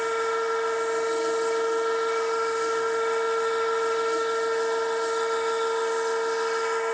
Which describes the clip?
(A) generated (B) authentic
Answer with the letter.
A